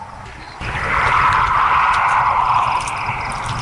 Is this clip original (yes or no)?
yes